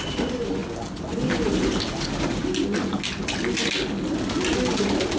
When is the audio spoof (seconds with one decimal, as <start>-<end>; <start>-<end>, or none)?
none